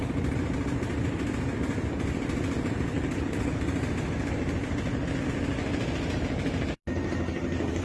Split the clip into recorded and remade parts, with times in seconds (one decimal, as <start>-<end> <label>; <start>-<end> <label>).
0.0-2.9 recorded; 2.9-3.6 remade; 3.6-7.8 recorded